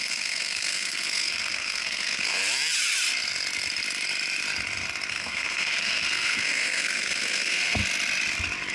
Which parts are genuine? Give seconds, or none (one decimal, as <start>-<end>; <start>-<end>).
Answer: 2.4-5.1; 7.8-8.7